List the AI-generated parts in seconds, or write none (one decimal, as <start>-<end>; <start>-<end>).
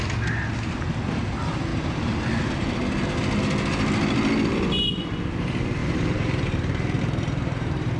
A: 1.7-2.2; 5.8-8.0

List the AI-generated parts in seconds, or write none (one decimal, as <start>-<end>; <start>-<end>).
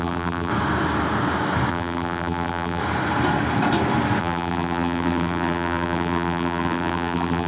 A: 0.0-0.5; 1.7-2.8; 4.2-7.5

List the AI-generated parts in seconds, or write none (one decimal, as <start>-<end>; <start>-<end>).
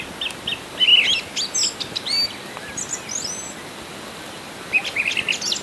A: none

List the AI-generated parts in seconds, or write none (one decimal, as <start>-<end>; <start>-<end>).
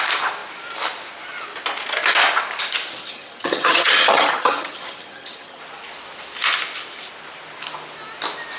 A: 3.0-5.6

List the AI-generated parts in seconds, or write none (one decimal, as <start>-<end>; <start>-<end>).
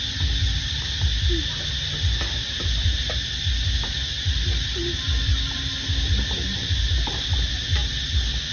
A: none